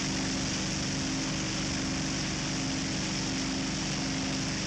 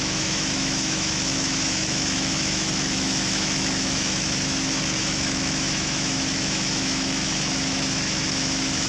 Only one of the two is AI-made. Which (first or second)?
second